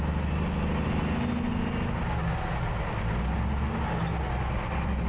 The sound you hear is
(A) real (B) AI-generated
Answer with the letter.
A